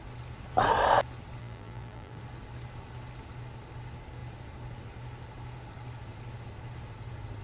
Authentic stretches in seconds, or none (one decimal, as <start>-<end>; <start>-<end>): 0.0-1.4; 2.2-7.4